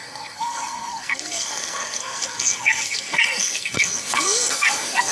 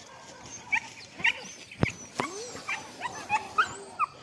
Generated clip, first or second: first